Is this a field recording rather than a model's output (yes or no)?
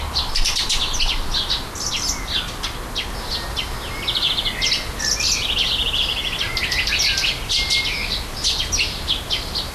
yes